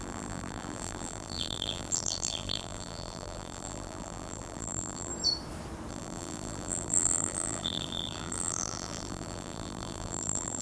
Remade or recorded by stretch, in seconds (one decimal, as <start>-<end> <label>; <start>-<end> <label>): 0.0-5.1 remade; 5.1-5.9 recorded; 5.9-10.6 remade